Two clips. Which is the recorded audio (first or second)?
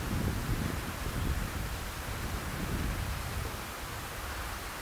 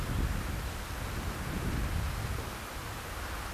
second